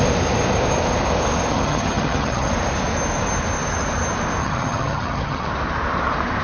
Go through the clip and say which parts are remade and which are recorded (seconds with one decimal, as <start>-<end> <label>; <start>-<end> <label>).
0.0-1.5 recorded; 1.5-2.5 remade; 2.5-4.4 recorded; 4.4-5.5 remade; 5.5-6.4 recorded